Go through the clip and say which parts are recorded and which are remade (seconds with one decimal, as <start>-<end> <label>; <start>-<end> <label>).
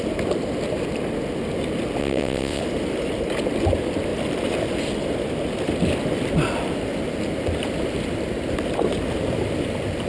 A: 0.0-2.0 recorded; 2.0-2.6 remade; 2.6-10.1 recorded